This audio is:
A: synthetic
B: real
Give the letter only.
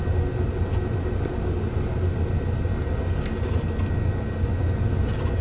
B